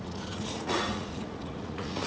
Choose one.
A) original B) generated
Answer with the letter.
B